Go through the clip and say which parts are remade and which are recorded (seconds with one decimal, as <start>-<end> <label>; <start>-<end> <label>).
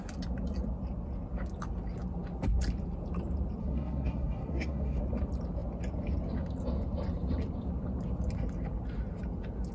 0.0-3.6 recorded; 3.6-5.0 remade; 5.0-9.7 recorded